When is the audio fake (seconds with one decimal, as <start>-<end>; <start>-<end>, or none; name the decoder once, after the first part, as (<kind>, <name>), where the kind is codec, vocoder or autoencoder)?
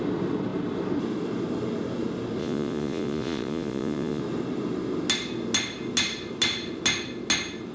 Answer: 2.4-4.2 (vocoder, Vocos)